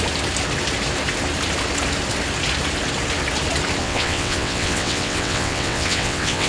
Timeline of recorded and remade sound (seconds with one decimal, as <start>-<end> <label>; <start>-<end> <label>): 0.0-3.8 recorded; 3.8-6.5 remade